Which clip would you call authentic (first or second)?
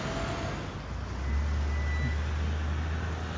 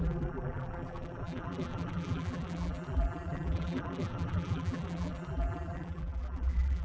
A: first